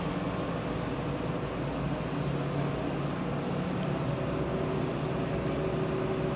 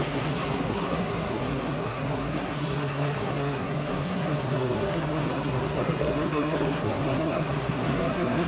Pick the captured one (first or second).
first